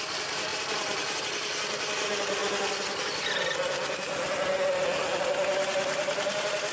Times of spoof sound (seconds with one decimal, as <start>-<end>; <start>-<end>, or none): none